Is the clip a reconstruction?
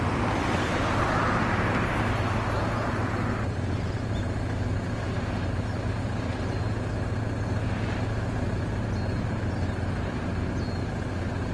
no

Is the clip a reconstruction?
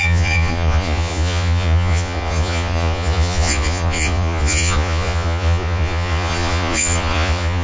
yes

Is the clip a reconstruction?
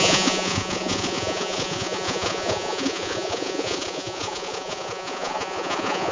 yes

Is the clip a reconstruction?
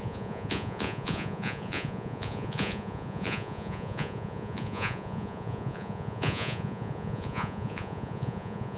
yes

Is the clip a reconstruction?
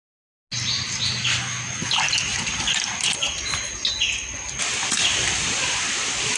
no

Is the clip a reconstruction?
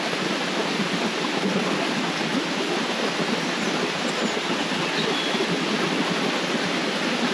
no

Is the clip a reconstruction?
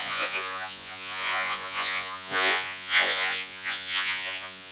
yes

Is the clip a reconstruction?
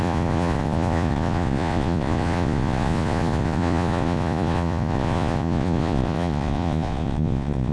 yes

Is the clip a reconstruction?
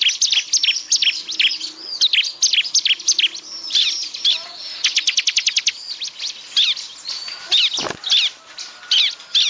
no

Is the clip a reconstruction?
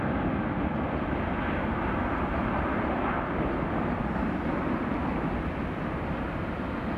no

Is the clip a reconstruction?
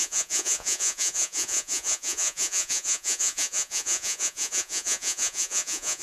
yes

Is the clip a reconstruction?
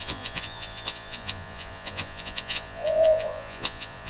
yes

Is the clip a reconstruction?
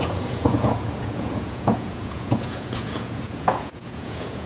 yes